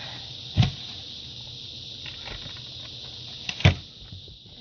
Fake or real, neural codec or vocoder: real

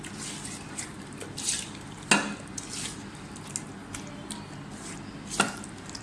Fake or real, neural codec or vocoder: real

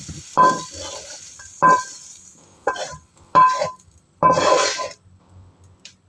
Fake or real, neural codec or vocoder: fake, vocoder, BigVGAN v2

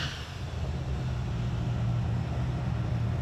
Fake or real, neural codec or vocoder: real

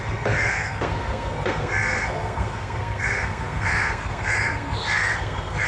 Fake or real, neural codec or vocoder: fake, codec, SNAC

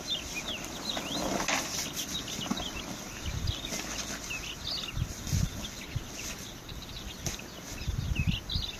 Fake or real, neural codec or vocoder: real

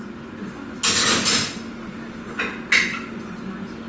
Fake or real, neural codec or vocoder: real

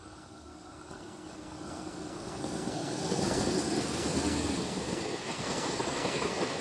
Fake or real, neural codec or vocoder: fake, codec, SNAC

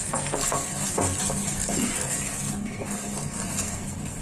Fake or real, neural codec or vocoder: fake, codec, SNAC